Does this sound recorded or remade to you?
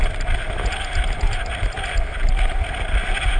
recorded